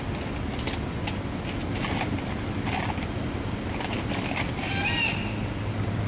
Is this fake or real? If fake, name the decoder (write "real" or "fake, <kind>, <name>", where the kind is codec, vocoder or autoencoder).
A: real